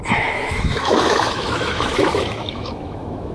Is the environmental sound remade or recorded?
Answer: remade